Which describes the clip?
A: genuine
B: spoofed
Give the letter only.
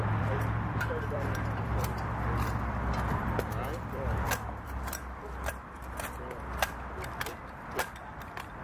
B